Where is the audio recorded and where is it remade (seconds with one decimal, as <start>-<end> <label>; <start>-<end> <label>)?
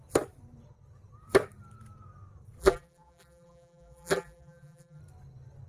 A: 0.0-2.6 recorded; 2.6-5.0 remade; 5.0-5.7 recorded